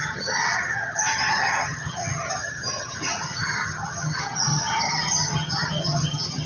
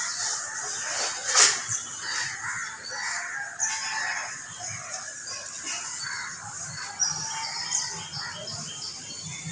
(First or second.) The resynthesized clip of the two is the first